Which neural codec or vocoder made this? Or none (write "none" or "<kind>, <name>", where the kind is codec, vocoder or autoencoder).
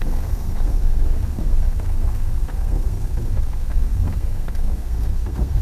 codec, SNAC